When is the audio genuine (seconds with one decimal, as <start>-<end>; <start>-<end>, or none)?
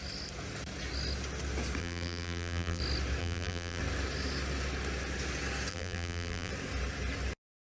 0.0-1.8; 2.8-3.2; 3.8-5.7; 6.5-7.7